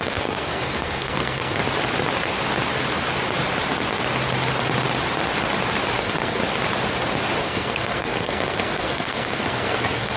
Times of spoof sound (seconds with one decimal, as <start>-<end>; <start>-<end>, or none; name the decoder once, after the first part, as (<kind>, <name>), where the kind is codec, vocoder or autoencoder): 0.0-1.6 (codec, SNAC); 6.0-6.4; 7.4-10.2